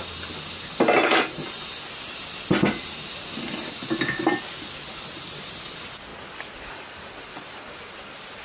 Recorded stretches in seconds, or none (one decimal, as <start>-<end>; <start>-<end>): 0.0-8.4